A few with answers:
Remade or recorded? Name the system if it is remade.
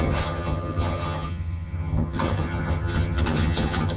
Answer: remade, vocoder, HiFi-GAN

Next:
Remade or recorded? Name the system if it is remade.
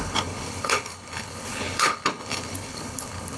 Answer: remade, codec, HILCodec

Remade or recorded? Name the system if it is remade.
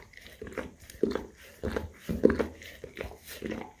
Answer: recorded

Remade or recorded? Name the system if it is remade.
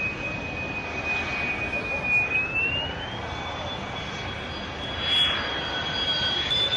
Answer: recorded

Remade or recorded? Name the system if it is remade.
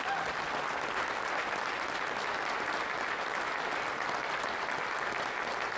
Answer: recorded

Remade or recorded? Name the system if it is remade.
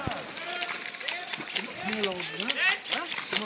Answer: recorded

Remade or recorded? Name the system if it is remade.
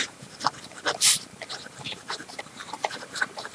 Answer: remade, vocoder, BigVGAN v2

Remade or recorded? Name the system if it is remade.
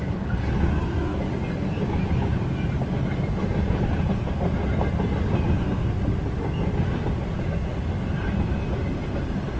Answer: recorded